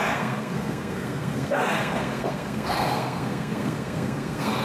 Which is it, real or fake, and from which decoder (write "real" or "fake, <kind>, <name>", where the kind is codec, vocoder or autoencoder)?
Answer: fake, codec, SNAC